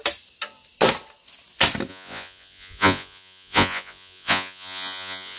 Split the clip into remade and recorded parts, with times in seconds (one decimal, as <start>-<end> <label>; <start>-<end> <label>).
0.0-1.9 recorded; 1.9-5.4 remade